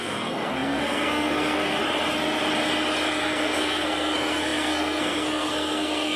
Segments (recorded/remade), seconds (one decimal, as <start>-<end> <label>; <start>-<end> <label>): 0.0-1.8 remade; 1.8-3.2 recorded; 3.2-6.2 remade